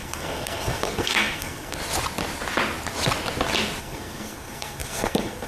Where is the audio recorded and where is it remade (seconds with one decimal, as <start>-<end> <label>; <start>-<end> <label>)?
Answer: 0.0-1.8 remade; 1.8-3.8 recorded; 3.8-5.5 remade